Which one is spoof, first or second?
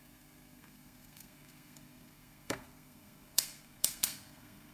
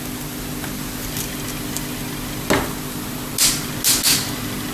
first